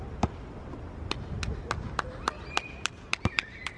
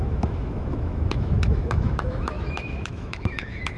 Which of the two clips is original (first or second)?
first